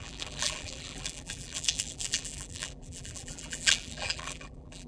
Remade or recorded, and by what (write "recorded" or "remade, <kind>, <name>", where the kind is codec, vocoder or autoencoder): remade, vocoder, BigVGAN v2